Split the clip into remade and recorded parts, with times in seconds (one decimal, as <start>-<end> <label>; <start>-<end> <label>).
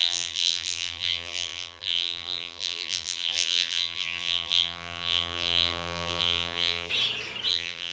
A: 0.0-6.9 remade; 6.9-7.5 recorded; 7.5-7.9 remade